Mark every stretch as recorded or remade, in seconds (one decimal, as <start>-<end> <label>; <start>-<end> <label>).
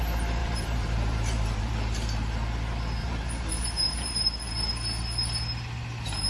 0.0-0.4 recorded; 0.4-1.7 remade; 1.7-3.0 recorded; 3.0-4.5 remade; 4.5-6.3 recorded